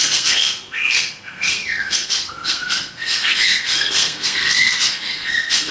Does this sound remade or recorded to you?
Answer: remade